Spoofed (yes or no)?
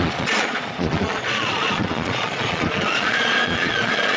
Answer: yes